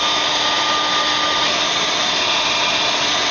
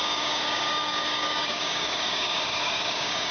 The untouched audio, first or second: first